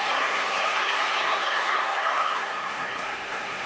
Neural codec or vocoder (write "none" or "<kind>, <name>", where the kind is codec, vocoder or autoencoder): codec, SNAC